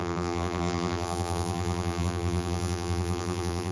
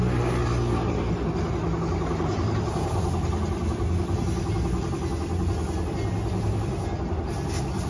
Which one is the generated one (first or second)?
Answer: first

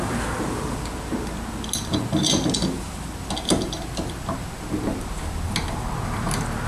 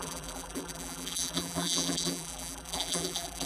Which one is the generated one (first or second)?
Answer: second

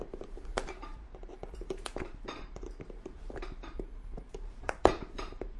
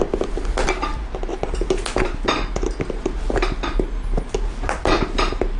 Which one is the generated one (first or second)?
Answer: first